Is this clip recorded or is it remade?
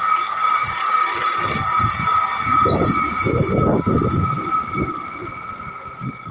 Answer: recorded